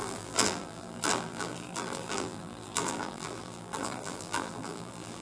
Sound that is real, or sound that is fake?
fake